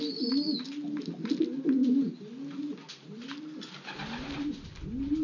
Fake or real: real